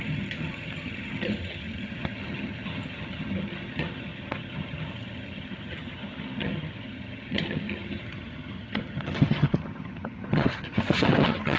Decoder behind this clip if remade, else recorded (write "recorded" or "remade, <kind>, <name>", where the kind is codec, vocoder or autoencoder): remade, vocoder, HiFi-GAN